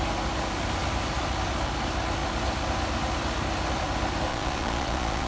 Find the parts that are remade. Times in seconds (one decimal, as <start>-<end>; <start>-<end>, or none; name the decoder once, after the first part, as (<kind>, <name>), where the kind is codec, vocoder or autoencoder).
4.3-5.3 (vocoder, Vocos)